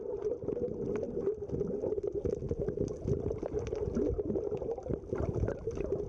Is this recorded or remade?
recorded